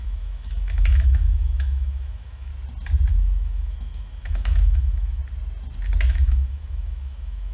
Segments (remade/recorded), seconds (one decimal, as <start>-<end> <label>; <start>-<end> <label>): 0.0-2.5 remade; 2.5-3.1 recorded; 3.1-5.2 remade; 5.2-6.1 recorded; 6.1-7.5 remade